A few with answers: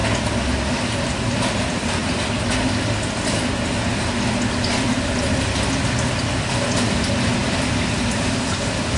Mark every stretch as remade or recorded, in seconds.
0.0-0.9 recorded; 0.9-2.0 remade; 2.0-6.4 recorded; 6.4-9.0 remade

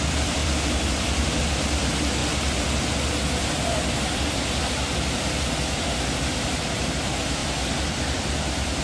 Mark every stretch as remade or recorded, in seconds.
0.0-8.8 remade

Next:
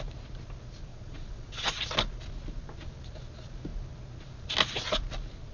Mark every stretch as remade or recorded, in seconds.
0.0-0.9 recorded; 0.9-1.8 remade; 1.8-5.5 recorded

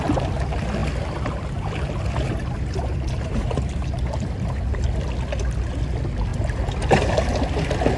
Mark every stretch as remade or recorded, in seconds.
0.0-2.3 recorded; 2.3-4.9 remade; 4.9-8.0 recorded

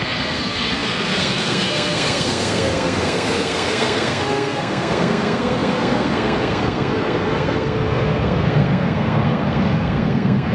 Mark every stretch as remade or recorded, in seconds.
0.0-10.5 remade

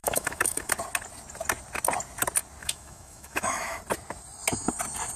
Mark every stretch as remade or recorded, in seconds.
0.0-0.7 remade; 0.7-2.6 recorded; 2.6-3.8 remade; 3.8-5.2 recorded

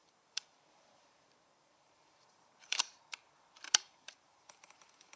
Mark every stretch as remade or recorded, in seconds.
0.0-5.2 remade

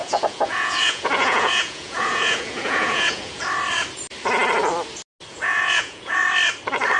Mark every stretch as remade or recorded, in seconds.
0.0-3.4 remade; 3.4-5.3 recorded; 5.3-6.2 remade; 6.2-7.0 recorded